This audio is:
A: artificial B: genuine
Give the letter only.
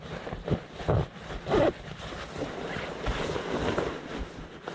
B